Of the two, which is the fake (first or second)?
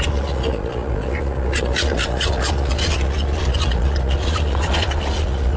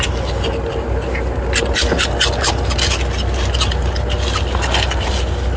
first